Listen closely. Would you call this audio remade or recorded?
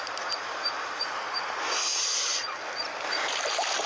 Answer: recorded